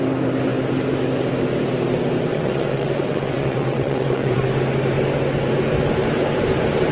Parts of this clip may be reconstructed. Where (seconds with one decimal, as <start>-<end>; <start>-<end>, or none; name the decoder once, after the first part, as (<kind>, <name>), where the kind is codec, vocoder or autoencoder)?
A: 2.3-4.4 (vocoder, WaveNeXt)